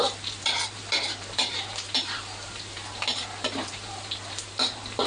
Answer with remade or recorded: remade